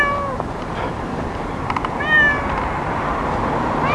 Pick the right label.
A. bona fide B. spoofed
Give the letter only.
A